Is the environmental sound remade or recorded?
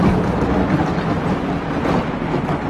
recorded